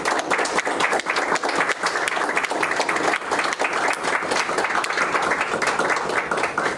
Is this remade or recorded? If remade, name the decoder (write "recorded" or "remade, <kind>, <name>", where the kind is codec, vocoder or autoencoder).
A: recorded